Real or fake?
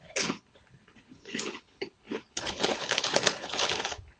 fake